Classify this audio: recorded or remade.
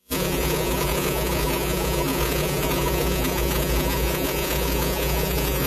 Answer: remade